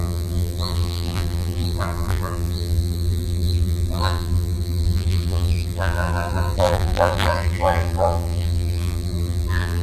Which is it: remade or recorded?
remade